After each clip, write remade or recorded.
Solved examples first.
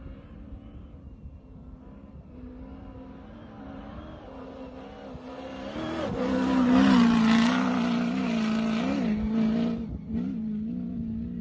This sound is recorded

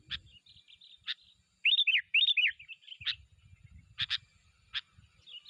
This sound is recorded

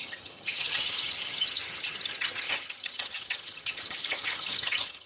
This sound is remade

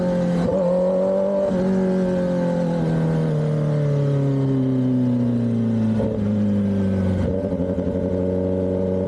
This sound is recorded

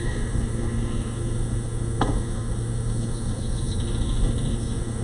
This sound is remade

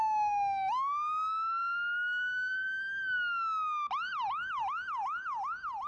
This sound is recorded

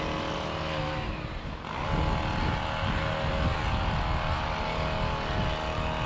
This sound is recorded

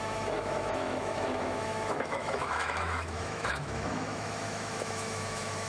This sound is remade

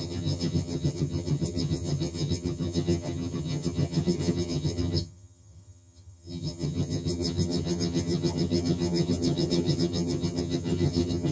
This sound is remade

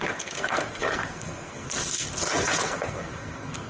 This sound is remade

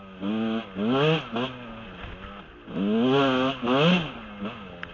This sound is recorded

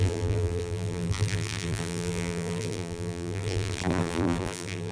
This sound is remade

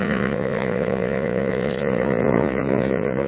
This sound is remade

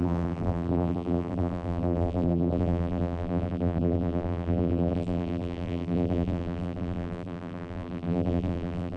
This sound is remade